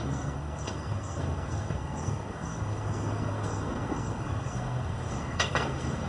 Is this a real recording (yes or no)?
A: no